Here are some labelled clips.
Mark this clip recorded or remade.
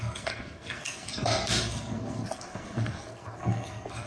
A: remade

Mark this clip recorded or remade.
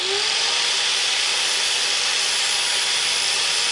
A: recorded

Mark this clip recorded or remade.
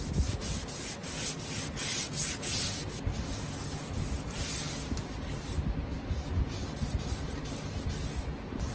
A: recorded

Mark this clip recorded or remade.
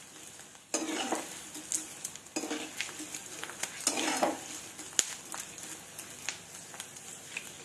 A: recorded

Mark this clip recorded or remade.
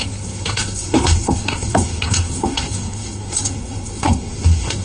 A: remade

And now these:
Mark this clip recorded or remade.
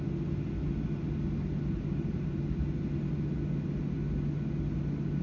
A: recorded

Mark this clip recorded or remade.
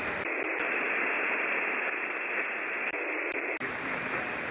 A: recorded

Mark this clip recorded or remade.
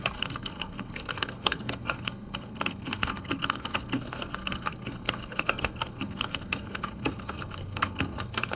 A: remade